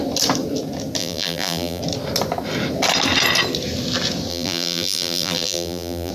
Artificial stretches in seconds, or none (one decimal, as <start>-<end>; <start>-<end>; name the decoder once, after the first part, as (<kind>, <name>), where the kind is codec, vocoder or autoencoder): 1.0-1.8 (vocoder, BigVGAN v2); 4.3-6.1